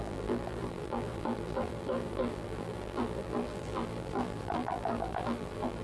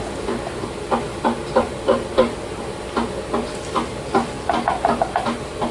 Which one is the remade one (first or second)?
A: first